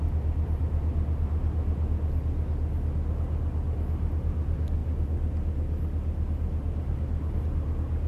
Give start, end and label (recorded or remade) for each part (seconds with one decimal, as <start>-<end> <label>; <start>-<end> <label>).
0.0-8.1 recorded